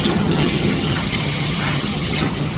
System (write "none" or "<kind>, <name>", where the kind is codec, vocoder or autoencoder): vocoder, HiFi-GAN